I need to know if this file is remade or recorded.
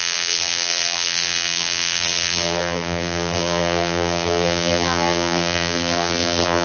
remade